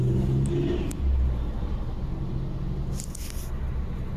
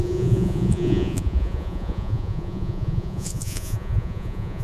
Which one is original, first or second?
first